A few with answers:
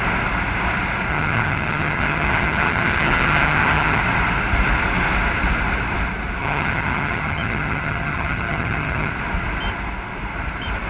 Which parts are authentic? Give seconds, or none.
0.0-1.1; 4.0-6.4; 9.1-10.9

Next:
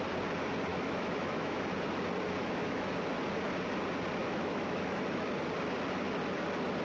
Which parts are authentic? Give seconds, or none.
0.0-0.7; 1.6-2.4; 2.9-4.2; 5.3-6.8

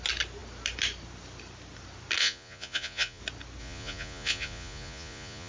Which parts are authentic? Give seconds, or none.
0.0-2.2; 3.2-3.6

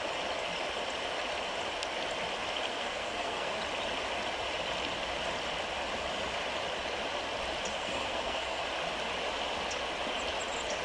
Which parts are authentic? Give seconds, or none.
0.0-2.7; 3.6-7.7; 8.6-10.8

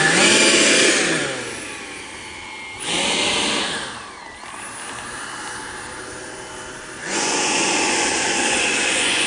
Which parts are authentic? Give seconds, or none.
0.0-7.0

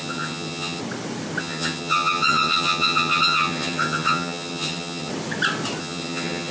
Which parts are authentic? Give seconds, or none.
0.8-1.4; 5.1-5.8

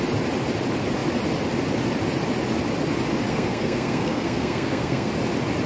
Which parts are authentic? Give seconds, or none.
0.0-3.3; 5.1-5.7